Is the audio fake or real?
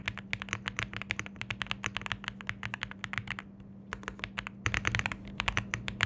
real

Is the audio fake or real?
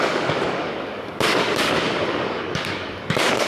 fake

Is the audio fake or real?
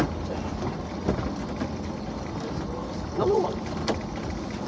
real